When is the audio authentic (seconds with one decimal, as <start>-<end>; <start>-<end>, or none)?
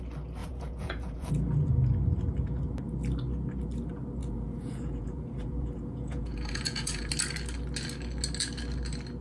0.0-0.4; 1.3-4.2; 7.1-9.2